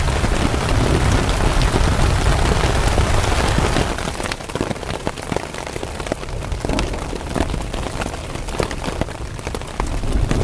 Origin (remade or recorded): recorded